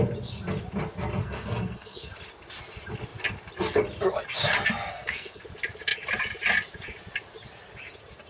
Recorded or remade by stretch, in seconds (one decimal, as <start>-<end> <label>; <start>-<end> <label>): 0.0-1.2 recorded; 1.2-2.1 remade; 2.1-4.9 recorded; 4.9-5.4 remade; 5.4-8.3 recorded